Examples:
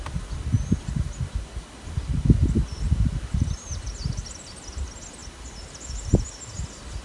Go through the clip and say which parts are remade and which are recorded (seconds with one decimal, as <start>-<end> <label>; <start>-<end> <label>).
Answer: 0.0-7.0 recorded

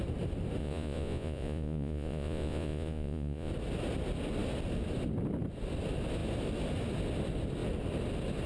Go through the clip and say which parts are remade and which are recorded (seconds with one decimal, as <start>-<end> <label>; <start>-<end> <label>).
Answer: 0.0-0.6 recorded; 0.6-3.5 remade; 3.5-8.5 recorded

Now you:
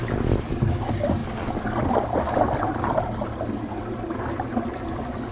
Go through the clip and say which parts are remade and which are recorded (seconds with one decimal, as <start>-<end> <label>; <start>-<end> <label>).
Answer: 0.0-5.3 recorded